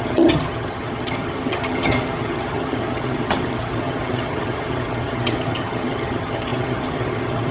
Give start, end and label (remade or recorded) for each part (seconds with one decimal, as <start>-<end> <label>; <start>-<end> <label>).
0.0-7.5 remade